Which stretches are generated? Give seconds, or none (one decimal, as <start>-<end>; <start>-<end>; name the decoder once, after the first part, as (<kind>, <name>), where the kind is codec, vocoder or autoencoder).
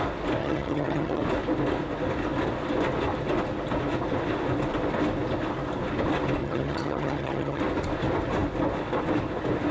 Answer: 0.4-1.2 (vocoder, HiFi-GAN); 6.4-7.6